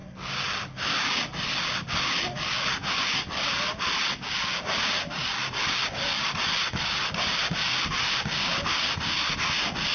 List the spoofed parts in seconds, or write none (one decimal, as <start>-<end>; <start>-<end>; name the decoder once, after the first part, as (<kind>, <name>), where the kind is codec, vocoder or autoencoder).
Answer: none